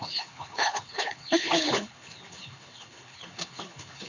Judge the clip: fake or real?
fake